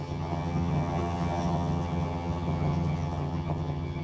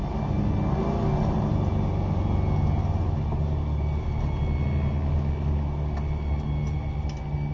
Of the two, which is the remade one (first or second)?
first